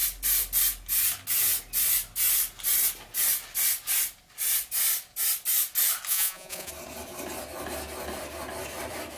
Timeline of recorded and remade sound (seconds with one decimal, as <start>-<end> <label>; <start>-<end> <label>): 0.0-6.1 recorded; 6.1-6.7 remade; 6.7-9.2 recorded